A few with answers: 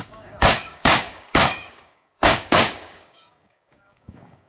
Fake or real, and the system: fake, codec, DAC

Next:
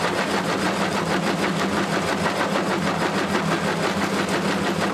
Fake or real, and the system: real